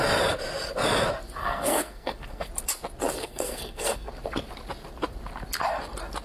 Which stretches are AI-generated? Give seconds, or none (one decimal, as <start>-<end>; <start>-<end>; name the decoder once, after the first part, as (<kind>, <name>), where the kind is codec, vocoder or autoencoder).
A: 1.4-2.5 (codec, SNAC); 3.2-4.1